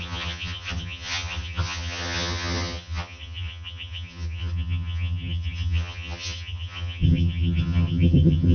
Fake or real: fake